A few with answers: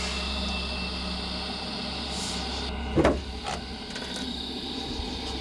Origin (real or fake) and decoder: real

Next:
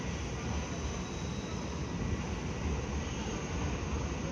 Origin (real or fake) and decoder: real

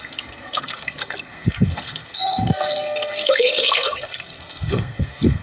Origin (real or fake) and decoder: fake, codec, SNAC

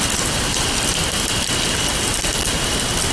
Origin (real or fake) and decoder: real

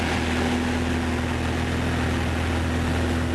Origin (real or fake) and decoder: real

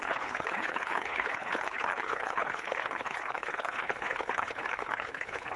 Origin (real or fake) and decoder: fake, codec, HILCodec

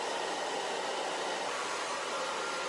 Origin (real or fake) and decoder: real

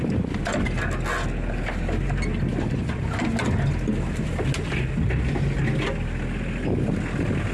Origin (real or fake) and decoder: real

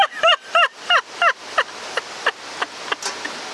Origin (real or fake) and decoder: real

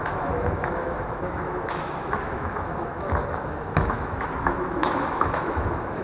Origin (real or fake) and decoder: fake, autoencoder, DAC-VAE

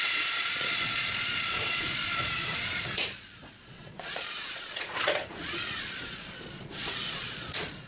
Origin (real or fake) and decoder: fake, vocoder, Vocos